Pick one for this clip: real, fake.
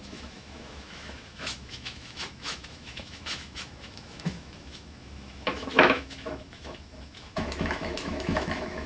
fake